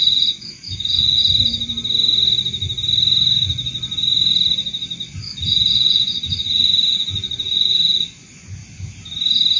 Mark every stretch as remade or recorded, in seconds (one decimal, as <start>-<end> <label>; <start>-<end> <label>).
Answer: 0.0-1.2 remade; 1.2-5.2 recorded; 5.2-8.6 remade; 8.6-9.6 recorded